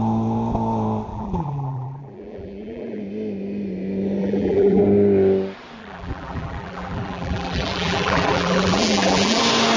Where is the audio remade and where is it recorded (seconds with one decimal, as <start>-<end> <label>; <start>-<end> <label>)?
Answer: 0.0-1.1 recorded; 1.1-3.0 remade; 3.0-4.2 recorded; 4.2-4.8 remade; 4.8-5.8 recorded; 5.8-9.4 remade; 9.4-9.8 recorded